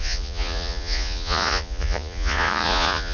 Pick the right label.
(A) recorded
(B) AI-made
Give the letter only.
B